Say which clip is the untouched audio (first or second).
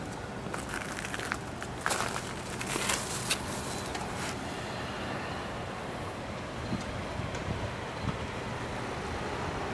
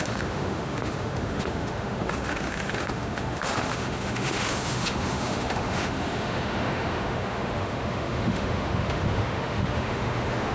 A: first